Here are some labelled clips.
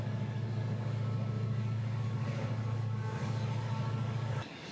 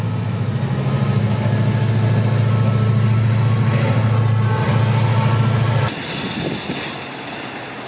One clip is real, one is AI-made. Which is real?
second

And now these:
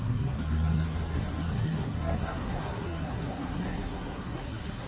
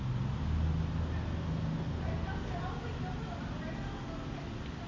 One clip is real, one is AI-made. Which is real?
second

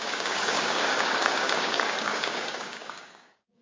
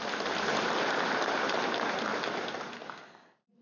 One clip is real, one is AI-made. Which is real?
second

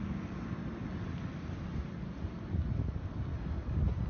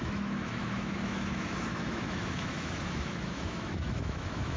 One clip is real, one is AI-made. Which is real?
first